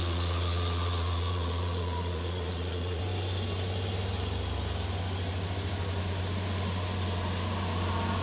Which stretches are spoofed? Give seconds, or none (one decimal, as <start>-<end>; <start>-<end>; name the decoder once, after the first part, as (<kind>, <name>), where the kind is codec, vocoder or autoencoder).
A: 0.0-3.0 (vocoder, Vocos)

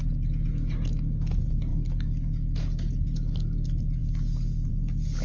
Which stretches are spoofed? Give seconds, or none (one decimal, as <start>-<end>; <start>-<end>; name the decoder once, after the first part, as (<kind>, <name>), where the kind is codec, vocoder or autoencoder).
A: none

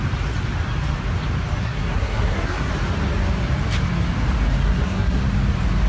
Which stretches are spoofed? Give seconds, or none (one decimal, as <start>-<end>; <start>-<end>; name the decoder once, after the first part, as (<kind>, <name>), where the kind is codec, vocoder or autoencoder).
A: 1.6-2.7 (codec, SNAC); 4.6-5.2

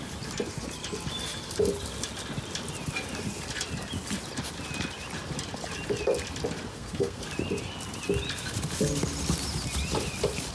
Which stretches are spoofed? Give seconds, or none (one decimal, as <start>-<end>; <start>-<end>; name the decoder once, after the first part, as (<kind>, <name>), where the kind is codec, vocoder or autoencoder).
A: 6.7-7.2 (codec, SNAC)

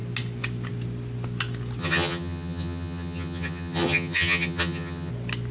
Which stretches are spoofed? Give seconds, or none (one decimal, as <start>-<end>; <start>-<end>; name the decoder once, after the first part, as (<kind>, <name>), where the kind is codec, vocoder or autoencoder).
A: 1.8-5.1 (vocoder, HiFi-GAN)

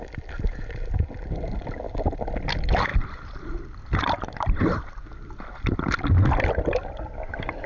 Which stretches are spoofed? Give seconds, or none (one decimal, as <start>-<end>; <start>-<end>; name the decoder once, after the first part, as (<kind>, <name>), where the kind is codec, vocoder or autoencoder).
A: none

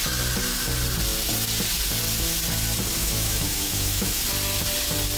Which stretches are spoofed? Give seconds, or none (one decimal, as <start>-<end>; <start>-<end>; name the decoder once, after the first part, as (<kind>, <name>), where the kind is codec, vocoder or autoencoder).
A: 3.0-4.1 (autoencoder, DAC-VAE)

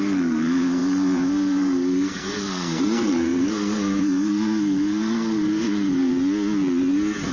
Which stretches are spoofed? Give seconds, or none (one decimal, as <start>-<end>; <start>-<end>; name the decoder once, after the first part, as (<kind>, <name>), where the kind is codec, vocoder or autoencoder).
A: 0.0-6.1 (codec, SNAC)